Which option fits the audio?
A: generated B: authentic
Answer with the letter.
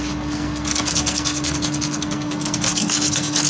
A